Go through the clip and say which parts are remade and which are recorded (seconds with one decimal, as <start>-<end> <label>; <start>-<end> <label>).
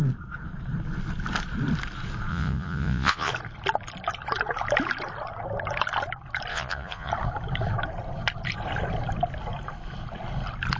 0.0-2.3 recorded; 2.3-3.3 remade; 3.3-6.5 recorded; 6.5-7.1 remade; 7.1-10.8 recorded